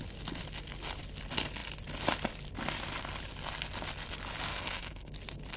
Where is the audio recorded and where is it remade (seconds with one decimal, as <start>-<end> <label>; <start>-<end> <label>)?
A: 0.0-4.5 recorded; 4.5-5.1 remade; 5.1-5.6 recorded